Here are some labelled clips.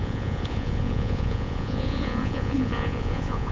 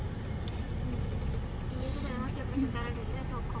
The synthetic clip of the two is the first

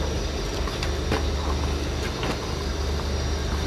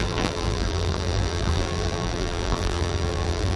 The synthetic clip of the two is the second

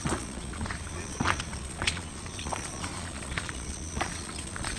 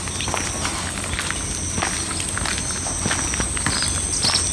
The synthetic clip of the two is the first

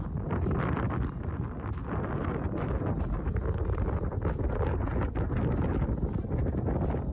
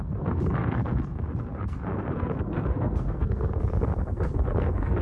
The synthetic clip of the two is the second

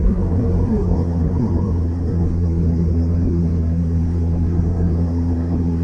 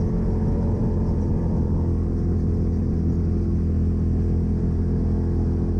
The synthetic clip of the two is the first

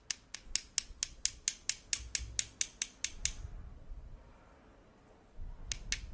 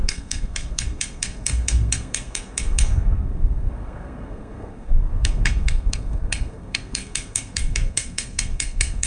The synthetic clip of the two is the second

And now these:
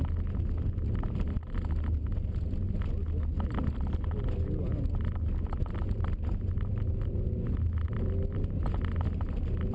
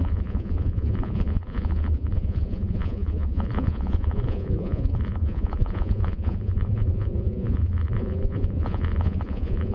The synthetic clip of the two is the second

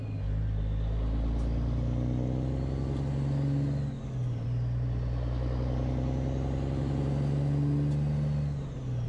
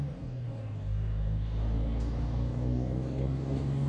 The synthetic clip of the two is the second